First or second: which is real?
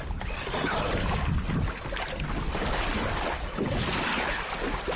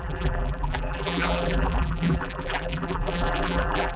first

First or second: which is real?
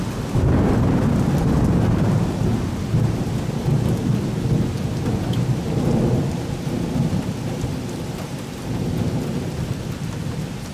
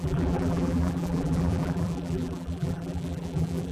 first